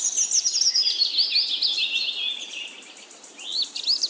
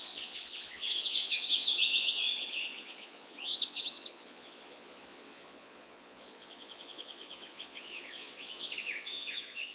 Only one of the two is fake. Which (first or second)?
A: second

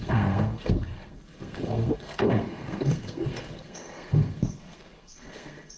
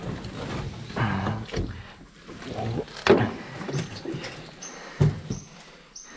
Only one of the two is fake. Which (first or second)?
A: first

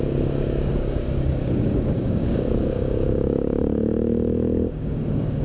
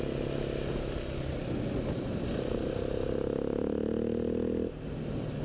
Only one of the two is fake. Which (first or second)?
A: first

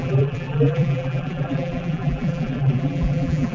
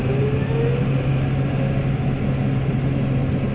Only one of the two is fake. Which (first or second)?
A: first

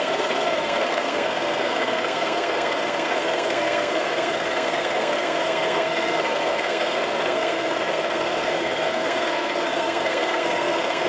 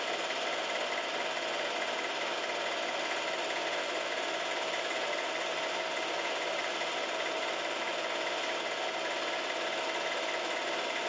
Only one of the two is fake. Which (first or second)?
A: first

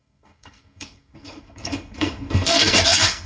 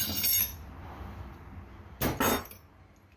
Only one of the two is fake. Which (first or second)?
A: first